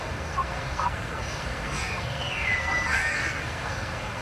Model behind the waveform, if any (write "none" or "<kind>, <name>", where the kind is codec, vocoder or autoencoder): codec, SNAC